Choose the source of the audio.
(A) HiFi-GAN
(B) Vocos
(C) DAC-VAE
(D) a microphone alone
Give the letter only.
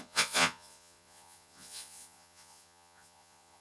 B